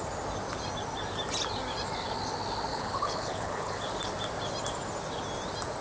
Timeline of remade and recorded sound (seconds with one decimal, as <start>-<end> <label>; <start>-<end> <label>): 0.0-2.7 recorded; 2.7-3.8 remade; 3.8-5.8 recorded